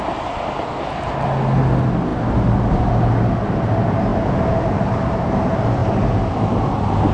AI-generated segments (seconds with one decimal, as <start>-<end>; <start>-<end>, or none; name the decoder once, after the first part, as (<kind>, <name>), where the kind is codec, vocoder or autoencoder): none